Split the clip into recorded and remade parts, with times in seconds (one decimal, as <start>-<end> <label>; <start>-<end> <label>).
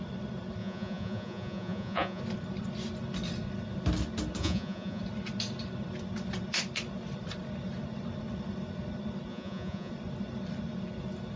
0.0-0.6 recorded; 0.6-2.2 remade; 2.2-4.4 recorded; 4.4-5.0 remade; 5.0-9.3 recorded; 9.3-9.9 remade; 9.9-11.4 recorded